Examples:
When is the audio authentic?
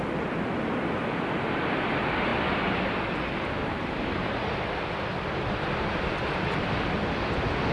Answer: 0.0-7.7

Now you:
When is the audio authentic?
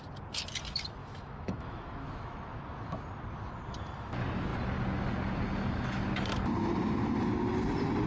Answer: 0.0-1.0; 2.6-8.1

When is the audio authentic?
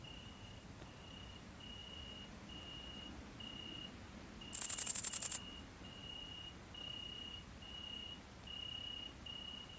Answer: 1.8-4.6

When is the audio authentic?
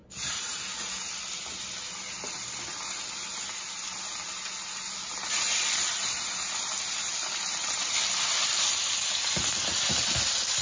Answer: 0.0-10.6